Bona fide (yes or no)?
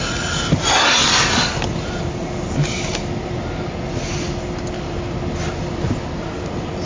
yes